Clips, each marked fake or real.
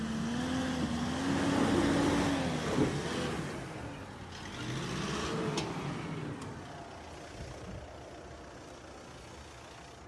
real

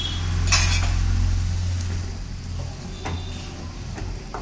real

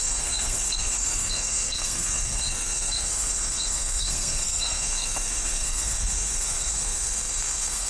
fake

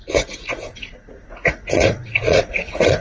fake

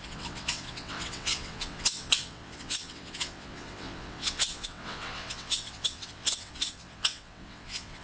fake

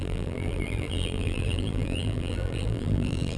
fake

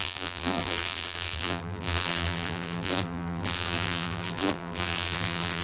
fake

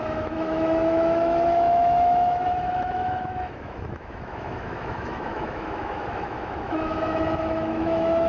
fake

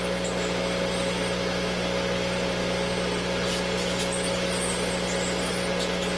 real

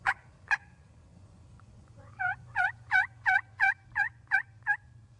fake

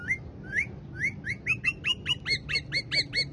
real